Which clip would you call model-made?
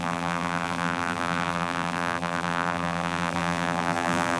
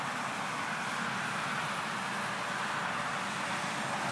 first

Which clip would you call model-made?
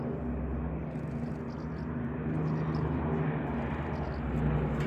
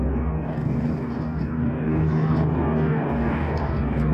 second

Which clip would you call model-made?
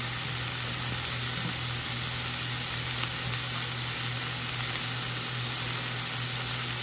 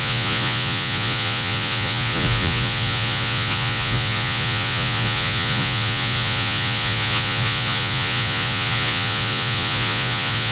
second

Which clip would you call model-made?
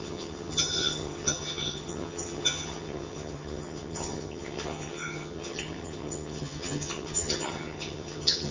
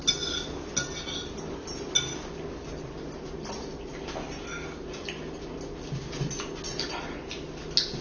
first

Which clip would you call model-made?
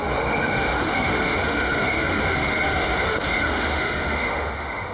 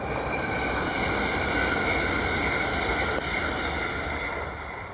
first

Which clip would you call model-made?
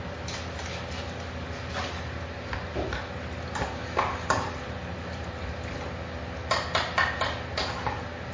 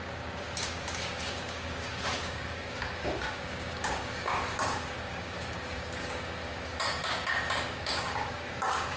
second